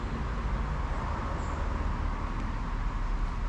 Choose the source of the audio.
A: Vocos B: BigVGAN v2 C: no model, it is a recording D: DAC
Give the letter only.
C